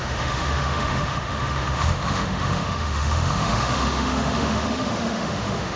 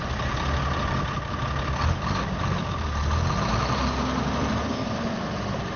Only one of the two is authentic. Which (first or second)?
second